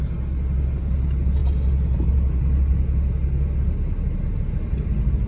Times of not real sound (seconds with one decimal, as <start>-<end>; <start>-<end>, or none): none